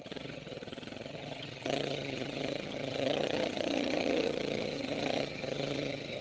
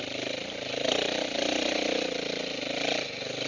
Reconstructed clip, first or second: first